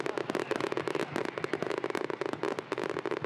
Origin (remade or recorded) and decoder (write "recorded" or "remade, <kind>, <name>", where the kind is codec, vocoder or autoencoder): recorded